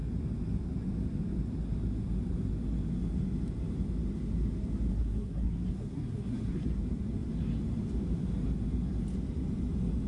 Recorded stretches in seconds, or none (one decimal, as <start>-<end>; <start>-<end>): 0.0-4.9; 6.7-10.1